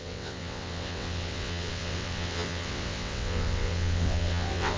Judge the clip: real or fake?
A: fake